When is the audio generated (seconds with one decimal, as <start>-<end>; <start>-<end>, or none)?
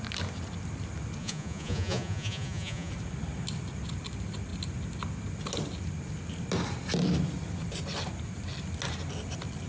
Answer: 1.2-2.9